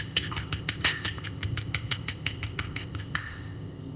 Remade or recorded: remade